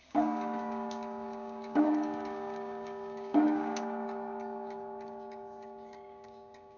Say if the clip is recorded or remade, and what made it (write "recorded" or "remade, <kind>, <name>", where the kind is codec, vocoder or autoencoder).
remade, codec, DAC